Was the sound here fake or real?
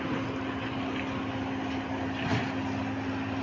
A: real